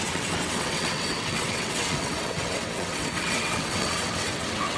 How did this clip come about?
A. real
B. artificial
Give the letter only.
B